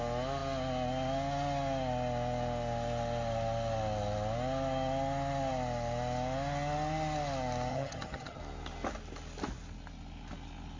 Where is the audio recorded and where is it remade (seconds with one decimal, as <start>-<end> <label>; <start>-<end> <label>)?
0.0-7.7 recorded; 7.7-8.4 remade; 8.4-10.8 recorded

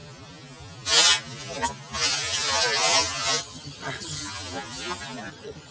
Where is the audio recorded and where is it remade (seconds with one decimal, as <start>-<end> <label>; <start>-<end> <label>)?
0.0-3.4 recorded; 3.4-4.2 remade; 4.2-5.3 recorded; 5.3-5.7 remade

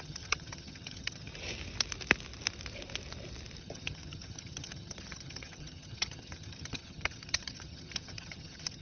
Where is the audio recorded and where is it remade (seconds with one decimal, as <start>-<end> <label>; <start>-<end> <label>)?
0.0-1.3 remade; 1.3-3.6 recorded; 3.6-8.8 remade

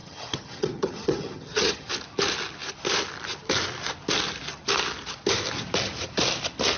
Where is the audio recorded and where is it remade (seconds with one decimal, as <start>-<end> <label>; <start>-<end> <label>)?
0.0-1.9 remade; 1.9-6.8 recorded

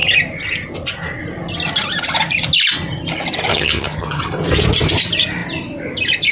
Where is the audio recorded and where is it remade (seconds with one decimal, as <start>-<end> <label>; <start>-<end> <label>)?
0.0-3.5 recorded; 3.5-4.2 remade; 4.2-6.3 recorded

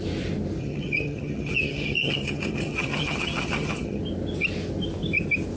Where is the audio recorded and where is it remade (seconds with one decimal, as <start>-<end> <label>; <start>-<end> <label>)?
0.0-0.6 recorded; 0.6-4.0 remade; 4.0-5.6 recorded